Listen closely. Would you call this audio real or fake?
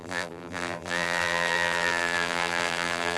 fake